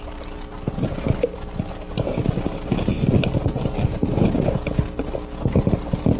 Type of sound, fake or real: real